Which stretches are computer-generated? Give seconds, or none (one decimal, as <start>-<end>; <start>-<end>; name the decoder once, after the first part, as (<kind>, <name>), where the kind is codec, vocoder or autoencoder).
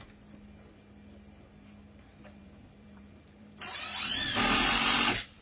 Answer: 2.1-5.4 (vocoder, BigVGAN v2)